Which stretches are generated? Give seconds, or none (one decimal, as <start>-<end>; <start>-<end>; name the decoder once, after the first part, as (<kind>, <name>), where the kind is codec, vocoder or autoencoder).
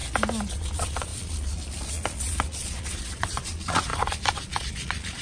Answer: 0.5-5.2 (vocoder, Vocos)